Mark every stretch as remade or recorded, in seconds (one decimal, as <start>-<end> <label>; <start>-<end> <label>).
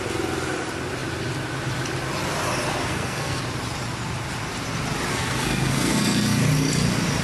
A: 0.0-2.8 recorded; 2.8-3.4 remade; 3.4-5.1 recorded; 5.1-6.4 remade; 6.4-7.2 recorded